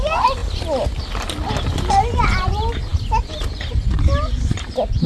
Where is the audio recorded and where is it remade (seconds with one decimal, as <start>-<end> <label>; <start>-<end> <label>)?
0.0-5.1 recorded